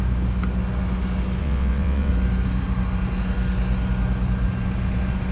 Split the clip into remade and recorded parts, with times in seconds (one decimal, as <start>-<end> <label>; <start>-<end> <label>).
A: 0.0-1.4 recorded; 1.4-2.1 remade; 2.1-5.3 recorded